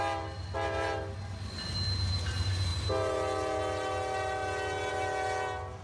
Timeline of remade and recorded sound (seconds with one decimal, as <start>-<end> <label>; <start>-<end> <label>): 0.0-5.8 recorded